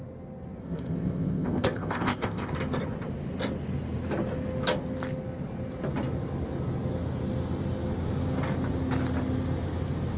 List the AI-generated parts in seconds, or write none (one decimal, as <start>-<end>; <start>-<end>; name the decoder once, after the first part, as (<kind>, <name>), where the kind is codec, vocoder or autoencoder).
0.6-2.5 (codec, ZipCodec)